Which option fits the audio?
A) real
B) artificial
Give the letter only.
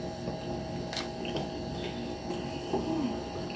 A